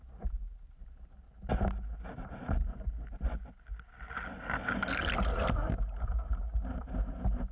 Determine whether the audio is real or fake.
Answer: real